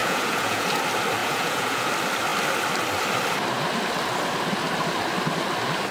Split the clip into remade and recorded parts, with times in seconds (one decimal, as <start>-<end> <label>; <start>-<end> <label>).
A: 0.0-0.7 remade; 0.7-1.2 recorded; 1.2-1.9 remade; 1.9-5.9 recorded